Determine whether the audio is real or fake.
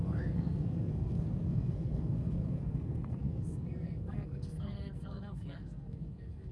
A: fake